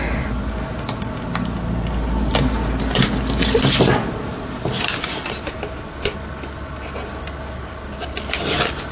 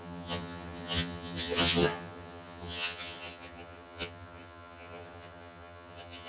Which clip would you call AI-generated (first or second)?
second